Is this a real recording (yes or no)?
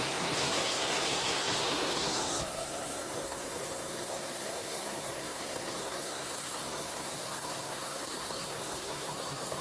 no